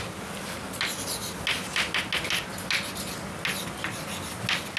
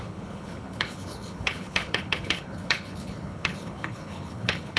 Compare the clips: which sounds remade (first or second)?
second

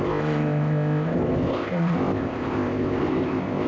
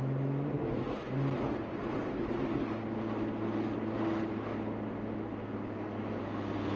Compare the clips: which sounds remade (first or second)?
first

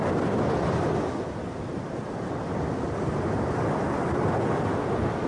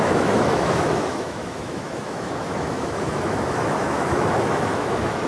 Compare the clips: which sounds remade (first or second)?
second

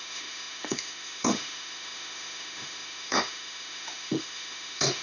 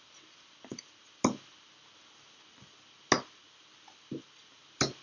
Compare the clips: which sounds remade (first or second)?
first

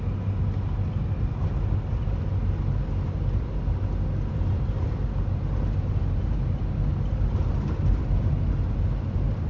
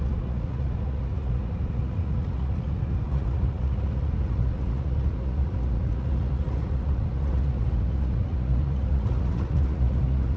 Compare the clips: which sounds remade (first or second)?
second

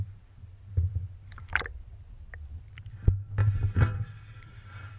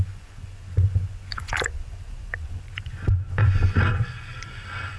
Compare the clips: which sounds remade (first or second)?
second